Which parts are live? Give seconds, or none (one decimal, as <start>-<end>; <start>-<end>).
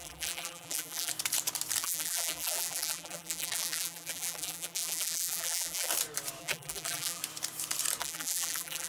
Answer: 1.1-1.8; 5.9-6.4; 7.2-8.0